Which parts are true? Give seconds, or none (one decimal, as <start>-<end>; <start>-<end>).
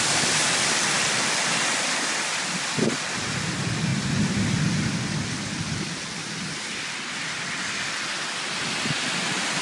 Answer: 0.0-6.2; 6.8-9.6